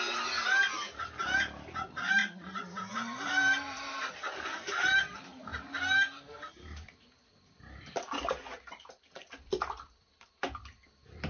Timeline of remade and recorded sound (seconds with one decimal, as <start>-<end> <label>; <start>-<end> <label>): 0.0-11.3 recorded

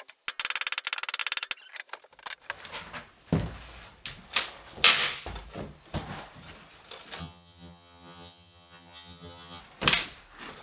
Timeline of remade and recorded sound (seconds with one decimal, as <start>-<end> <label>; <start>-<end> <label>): 0.0-7.2 recorded; 7.2-9.6 remade; 9.6-10.6 recorded

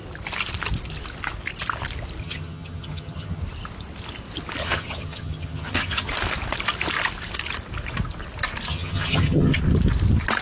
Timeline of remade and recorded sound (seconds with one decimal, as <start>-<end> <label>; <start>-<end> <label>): 0.0-2.2 recorded; 2.2-3.4 remade; 3.4-4.6 recorded; 4.6-6.1 remade; 6.1-8.7 recorded; 8.7-9.6 remade; 9.6-10.4 recorded

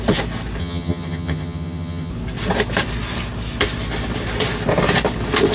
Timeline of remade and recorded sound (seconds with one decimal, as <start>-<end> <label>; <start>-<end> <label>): 0.0-0.6 recorded; 0.6-2.1 remade; 2.1-5.5 recorded

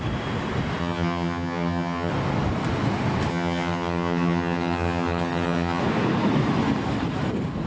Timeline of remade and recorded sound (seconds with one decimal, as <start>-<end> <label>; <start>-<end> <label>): 0.0-0.8 recorded; 0.8-2.1 remade; 2.1-3.3 recorded; 3.3-5.8 remade; 5.8-7.7 recorded

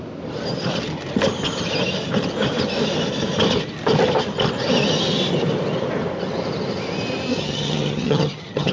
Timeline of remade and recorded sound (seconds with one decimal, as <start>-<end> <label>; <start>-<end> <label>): 0.0-7.3 recorded; 7.3-8.7 remade

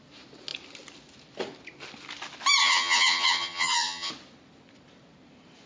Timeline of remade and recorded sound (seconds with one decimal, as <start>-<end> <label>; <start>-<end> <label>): 0.0-2.6 recorded; 2.6-4.1 remade; 4.1-5.7 recorded

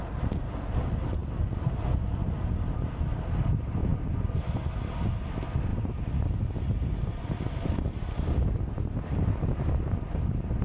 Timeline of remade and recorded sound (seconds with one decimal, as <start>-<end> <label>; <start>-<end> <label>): 0.0-10.6 recorded